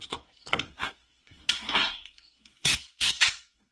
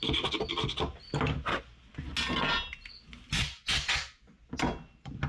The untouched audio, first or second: second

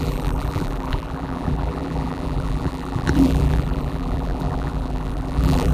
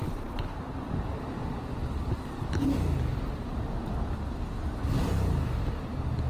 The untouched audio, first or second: second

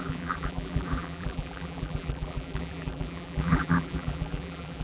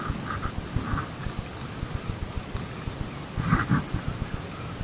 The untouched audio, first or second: second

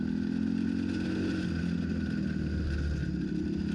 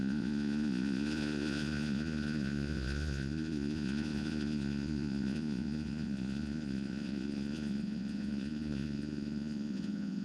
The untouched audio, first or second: first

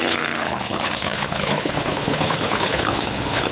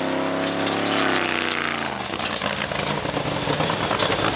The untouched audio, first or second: second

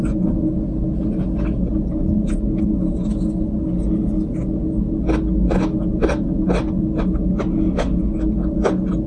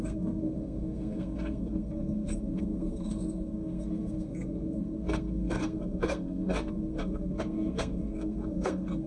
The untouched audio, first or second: first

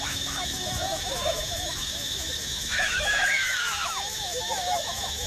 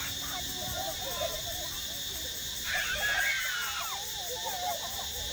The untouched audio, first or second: second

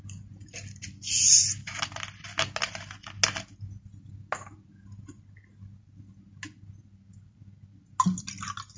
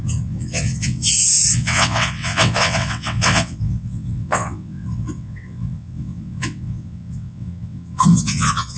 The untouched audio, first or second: first